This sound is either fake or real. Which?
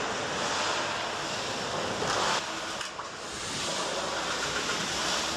real